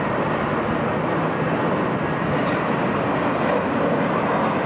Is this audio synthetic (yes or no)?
no